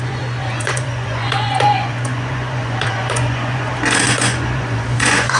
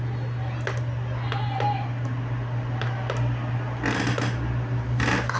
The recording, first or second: second